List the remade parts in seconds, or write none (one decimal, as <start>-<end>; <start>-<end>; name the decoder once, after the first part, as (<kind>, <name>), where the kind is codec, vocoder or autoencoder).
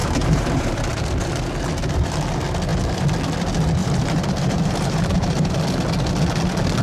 0.0-0.8 (vocoder, BigVGAN v2); 3.8-5.5